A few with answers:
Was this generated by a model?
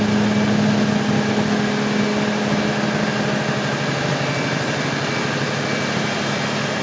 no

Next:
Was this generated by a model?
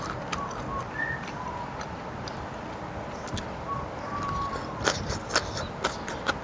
no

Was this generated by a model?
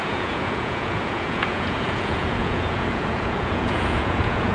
yes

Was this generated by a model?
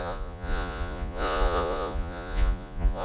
yes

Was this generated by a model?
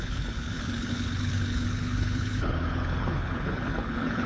yes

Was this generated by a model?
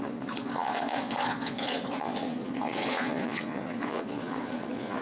yes